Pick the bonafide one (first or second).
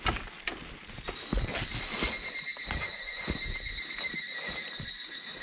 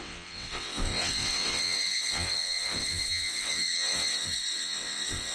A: first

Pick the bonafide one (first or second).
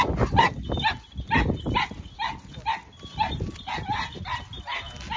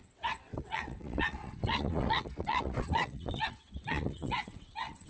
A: first